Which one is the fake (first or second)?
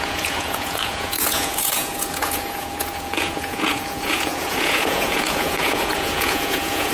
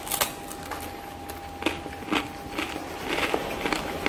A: first